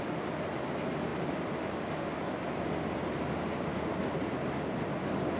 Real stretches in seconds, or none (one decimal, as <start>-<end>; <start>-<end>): 0.0-5.4